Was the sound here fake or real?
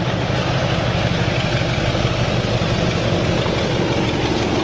real